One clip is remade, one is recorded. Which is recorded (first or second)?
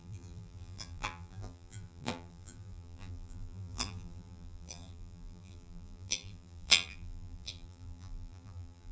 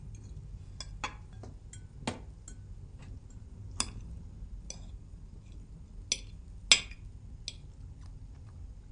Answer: second